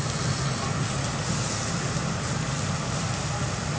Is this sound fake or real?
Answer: real